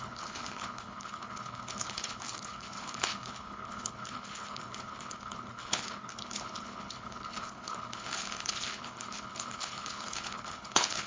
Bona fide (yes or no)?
no